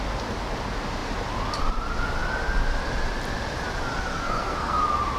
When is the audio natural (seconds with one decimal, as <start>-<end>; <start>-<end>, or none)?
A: 0.0-4.1; 4.8-5.2

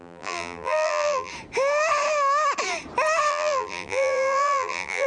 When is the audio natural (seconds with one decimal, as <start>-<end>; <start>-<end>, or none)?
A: 1.3-3.3

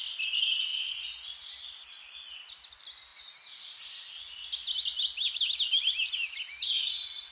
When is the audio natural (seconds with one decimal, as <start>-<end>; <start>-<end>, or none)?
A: 0.0-7.3

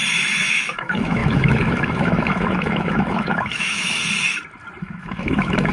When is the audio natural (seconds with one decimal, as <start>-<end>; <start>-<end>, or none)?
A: 0.0-0.5; 4.0-4.8

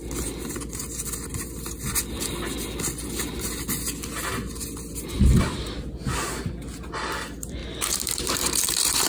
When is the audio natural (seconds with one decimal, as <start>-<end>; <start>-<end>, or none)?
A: 0.0-7.6

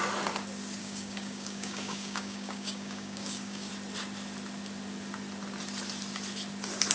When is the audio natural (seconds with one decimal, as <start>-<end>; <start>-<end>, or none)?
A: 0.0-0.8; 3.7-6.9

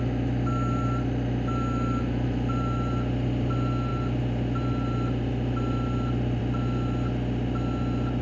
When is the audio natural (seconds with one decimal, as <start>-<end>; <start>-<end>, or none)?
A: 0.0-8.2

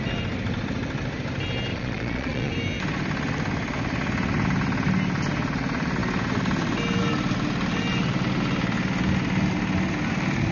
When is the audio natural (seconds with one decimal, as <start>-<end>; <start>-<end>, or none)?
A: 0.0-1.7; 2.5-10.5